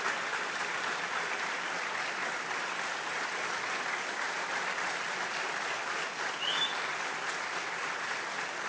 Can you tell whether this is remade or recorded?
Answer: remade